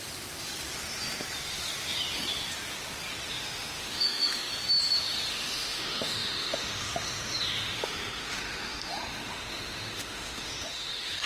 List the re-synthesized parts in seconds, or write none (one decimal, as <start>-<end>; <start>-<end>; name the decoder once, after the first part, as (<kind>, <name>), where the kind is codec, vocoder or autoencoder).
3.3-4.5 (autoencoder, DAC-VAE); 5.3-11.3